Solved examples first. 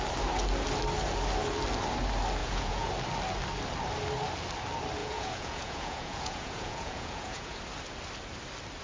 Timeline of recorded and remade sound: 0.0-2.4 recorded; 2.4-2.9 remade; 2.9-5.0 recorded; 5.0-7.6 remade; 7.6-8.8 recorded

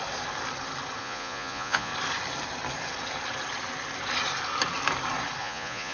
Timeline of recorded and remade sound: 0.0-1.0 recorded; 1.0-1.9 remade; 1.9-5.4 recorded; 5.4-5.9 remade